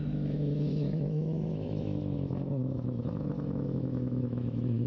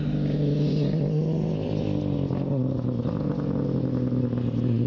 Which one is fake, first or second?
first